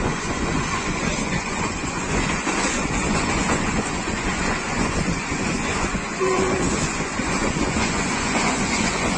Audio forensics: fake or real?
fake